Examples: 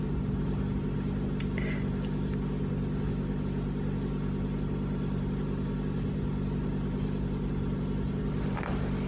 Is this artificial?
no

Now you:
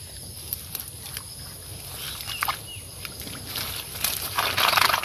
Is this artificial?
no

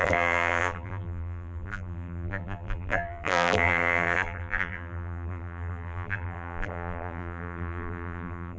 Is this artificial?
yes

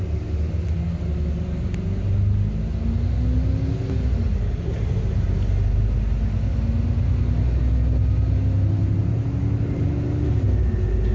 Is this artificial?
no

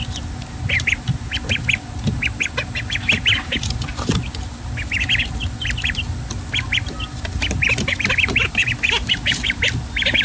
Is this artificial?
no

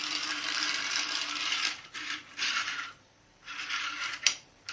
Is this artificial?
yes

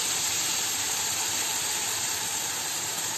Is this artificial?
yes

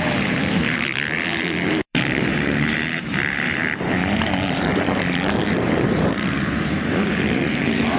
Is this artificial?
yes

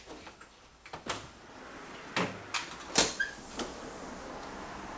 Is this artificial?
no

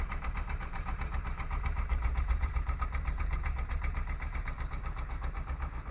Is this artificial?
yes